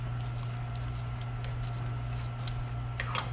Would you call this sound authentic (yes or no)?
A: yes